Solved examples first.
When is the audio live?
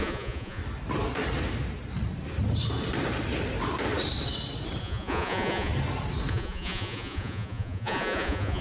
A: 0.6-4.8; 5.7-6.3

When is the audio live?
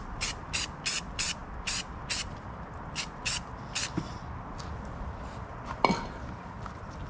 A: 0.0-7.1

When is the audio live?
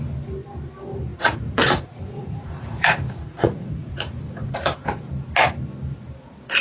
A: 0.0-1.1; 5.1-6.6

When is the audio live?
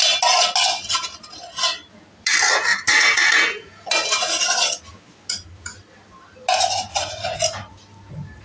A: 0.0-2.7; 3.9-6.9; 7.4-8.4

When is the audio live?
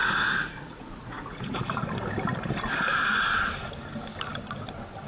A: 1.6-5.1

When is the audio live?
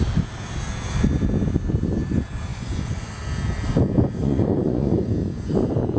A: 0.0-2.5; 3.1-4.2; 5.1-6.0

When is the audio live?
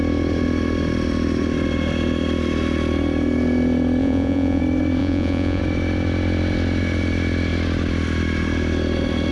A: 0.0-4.0; 4.6-5.0; 5.6-9.3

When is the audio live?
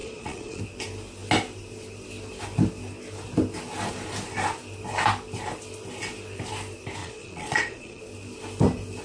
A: 0.6-7.0; 8.0-9.0